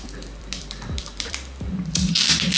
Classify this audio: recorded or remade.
remade